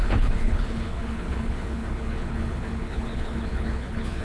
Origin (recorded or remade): remade